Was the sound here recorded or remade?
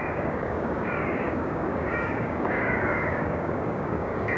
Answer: remade